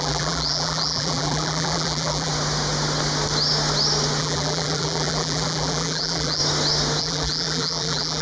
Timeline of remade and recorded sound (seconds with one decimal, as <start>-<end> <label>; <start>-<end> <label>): 0.0-2.3 remade; 2.3-4.2 recorded; 4.2-6.4 remade; 6.4-7.0 recorded; 7.0-8.2 remade